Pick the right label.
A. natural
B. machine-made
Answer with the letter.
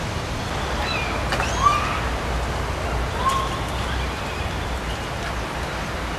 A